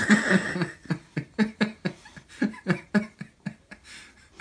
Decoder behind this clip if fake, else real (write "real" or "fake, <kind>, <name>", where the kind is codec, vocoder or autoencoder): real